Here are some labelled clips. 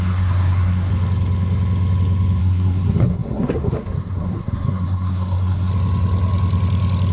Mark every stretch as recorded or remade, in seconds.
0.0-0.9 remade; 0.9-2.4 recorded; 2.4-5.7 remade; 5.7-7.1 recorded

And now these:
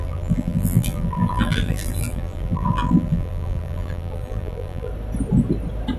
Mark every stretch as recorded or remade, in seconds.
0.0-4.9 remade; 4.9-6.0 recorded

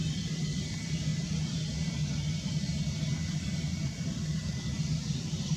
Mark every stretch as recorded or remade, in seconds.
0.0-1.1 remade; 1.1-3.3 recorded; 3.3-5.6 remade

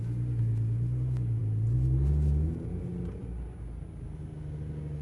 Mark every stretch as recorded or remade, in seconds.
0.0-5.0 recorded

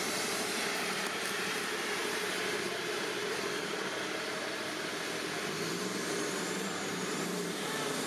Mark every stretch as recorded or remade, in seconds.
0.0-4.9 remade; 4.9-5.7 recorded; 5.7-8.1 remade

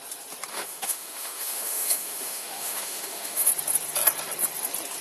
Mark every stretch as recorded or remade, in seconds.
0.0-0.5 recorded; 0.5-3.5 remade; 3.5-5.0 recorded

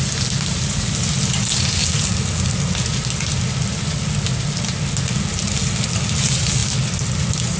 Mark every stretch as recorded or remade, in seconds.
0.0-7.6 recorded

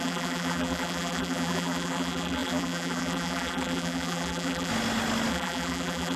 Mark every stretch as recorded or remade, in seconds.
0.0-4.7 remade; 4.7-5.3 recorded; 5.3-6.2 remade